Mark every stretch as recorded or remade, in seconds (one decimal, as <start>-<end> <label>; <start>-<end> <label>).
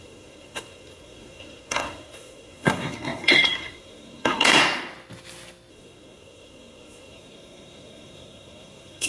0.0-4.6 remade; 4.6-5.7 recorded; 5.7-9.1 remade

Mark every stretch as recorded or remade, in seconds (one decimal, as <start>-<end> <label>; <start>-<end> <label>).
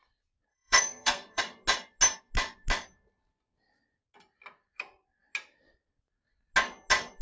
0.0-0.5 recorded; 0.5-1.4 remade; 1.4-7.2 recorded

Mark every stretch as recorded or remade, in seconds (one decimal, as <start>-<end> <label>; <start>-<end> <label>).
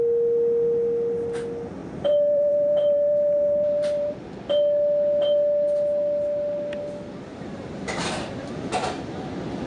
0.0-1.8 recorded; 1.8-4.3 remade; 4.3-7.3 recorded; 7.3-8.5 remade; 8.5-9.7 recorded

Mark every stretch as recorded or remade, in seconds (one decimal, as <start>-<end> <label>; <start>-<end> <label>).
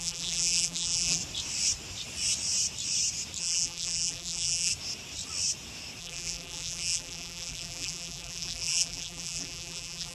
0.0-1.2 remade; 1.2-3.4 recorded; 3.4-4.7 remade; 4.7-6.0 recorded; 6.0-10.1 remade